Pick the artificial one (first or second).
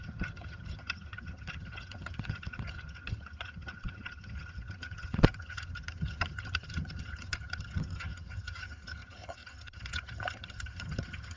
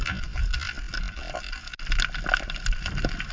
first